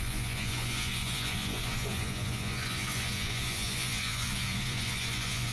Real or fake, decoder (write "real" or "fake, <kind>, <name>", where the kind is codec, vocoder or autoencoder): fake, vocoder, Vocos